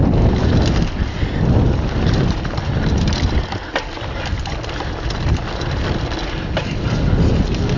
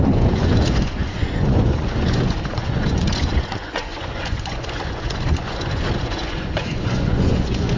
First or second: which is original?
first